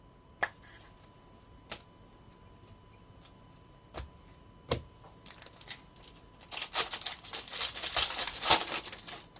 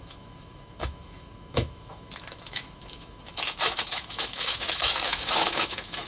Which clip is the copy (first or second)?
second